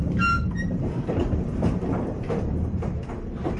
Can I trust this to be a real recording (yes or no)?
no